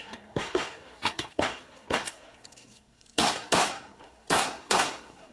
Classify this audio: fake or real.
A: fake